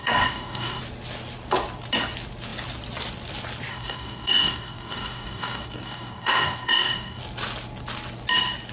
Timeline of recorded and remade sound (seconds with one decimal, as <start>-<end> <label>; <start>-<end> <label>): 0.0-0.8 remade; 0.8-3.7 recorded; 3.7-7.2 remade; 7.2-8.7 recorded